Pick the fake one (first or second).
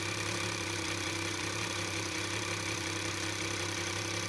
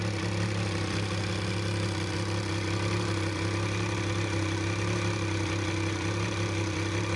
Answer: first